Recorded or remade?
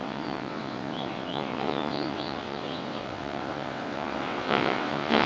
remade